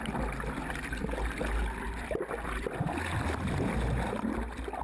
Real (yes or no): yes